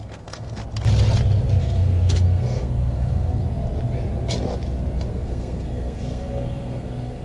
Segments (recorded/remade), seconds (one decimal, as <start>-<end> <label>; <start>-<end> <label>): 0.0-0.6 remade; 0.6-1.6 recorded; 1.6-3.4 remade; 3.4-5.1 recorded; 5.1-7.2 remade